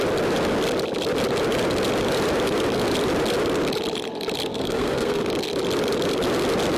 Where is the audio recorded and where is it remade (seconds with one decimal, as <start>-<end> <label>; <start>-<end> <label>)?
0.0-4.5 recorded; 4.5-5.2 remade; 5.2-6.8 recorded